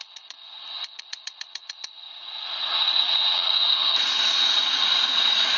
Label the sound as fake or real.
fake